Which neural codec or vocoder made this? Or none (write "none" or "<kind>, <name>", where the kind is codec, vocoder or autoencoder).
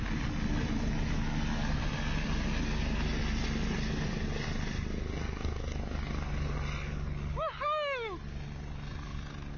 none